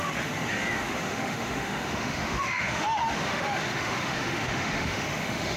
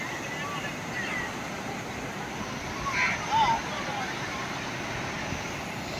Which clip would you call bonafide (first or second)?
second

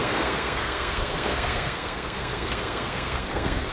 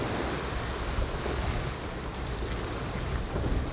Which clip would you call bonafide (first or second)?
second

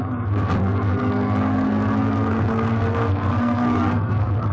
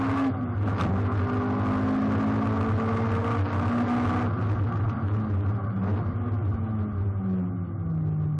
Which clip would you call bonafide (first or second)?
second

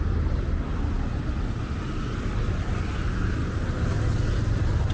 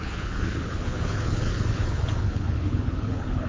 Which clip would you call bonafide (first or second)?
first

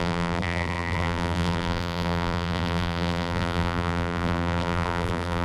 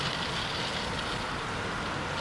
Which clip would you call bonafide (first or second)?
second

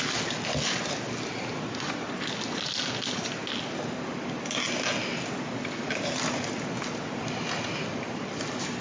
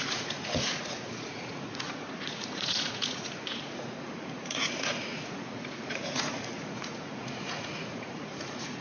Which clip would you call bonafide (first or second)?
first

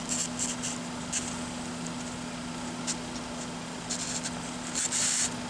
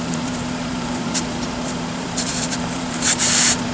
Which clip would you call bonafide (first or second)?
first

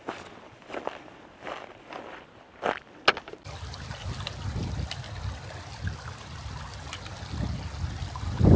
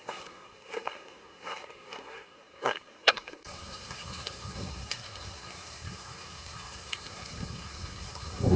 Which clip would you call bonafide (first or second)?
first